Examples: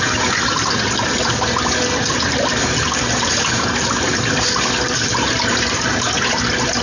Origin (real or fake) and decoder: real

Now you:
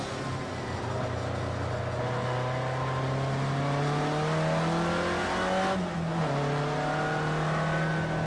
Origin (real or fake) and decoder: real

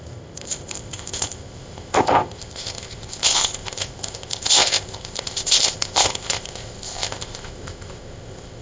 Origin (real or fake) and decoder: fake, codec, ZipCodec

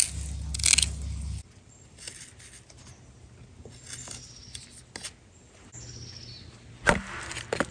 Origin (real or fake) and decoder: real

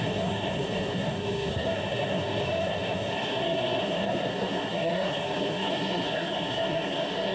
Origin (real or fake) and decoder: fake, codec, SNAC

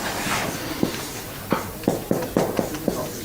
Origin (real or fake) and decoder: real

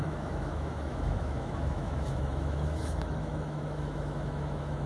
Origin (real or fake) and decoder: fake, autoencoder, DAC-VAE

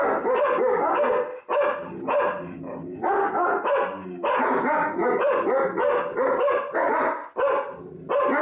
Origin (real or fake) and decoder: real